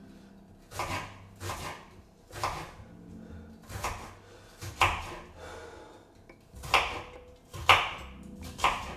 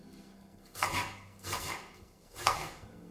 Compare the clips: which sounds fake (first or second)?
second